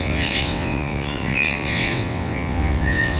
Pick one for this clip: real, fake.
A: fake